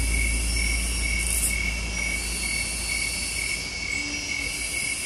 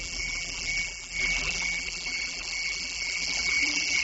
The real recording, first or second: first